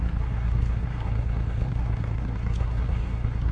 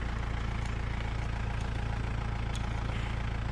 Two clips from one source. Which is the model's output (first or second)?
first